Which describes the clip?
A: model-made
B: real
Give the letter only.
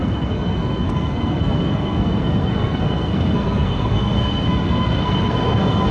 A